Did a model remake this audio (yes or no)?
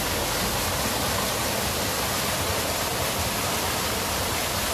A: no